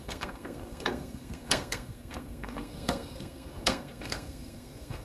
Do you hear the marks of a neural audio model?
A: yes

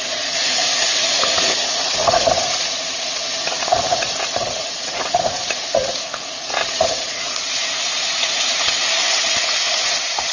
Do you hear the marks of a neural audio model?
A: yes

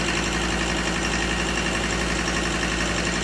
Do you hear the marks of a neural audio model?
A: no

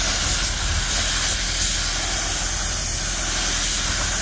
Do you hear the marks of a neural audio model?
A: no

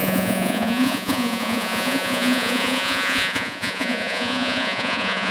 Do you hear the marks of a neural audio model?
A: yes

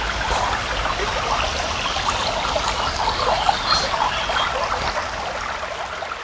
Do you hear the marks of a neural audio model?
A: no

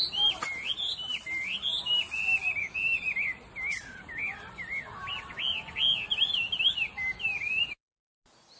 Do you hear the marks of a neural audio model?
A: no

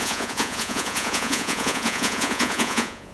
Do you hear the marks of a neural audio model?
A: yes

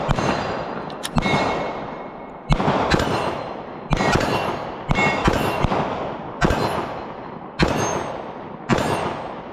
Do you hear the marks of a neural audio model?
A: no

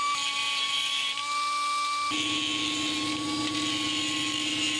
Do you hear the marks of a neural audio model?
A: no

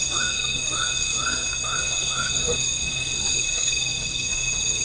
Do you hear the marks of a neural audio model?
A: yes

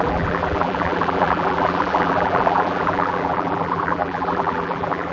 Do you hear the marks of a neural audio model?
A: yes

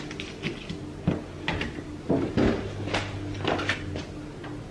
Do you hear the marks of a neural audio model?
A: no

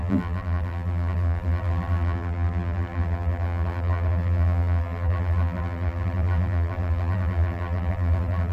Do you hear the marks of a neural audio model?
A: yes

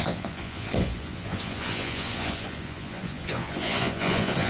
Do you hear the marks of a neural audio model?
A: yes